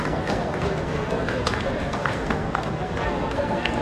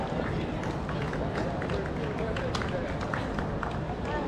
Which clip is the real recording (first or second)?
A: second